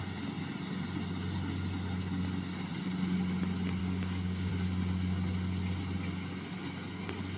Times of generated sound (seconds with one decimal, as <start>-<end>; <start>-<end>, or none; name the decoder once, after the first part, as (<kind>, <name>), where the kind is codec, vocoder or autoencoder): 3.8-4.5 (codec, DAC)